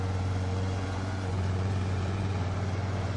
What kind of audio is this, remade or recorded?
remade